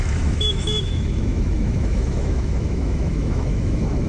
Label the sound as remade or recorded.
remade